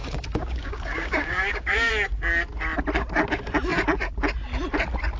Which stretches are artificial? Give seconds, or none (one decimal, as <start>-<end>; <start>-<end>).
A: 0.0-1.9